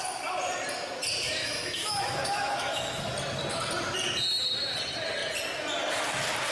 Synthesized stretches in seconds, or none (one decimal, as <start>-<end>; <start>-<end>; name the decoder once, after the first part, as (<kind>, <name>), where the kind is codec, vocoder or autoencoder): 1.4-3.0 (autoencoder, DAC-VAE)

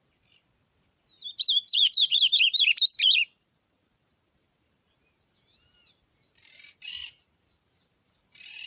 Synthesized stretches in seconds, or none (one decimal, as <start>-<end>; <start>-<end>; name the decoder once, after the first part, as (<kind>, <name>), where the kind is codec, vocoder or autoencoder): 0.0-8.7 (vocoder, BigVGAN v2)

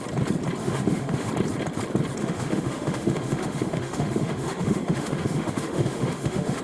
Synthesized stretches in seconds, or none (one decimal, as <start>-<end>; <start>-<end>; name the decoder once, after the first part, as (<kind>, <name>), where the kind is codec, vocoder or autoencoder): 0.6-1.3 (autoencoder, DAC-VAE); 2.2-6.6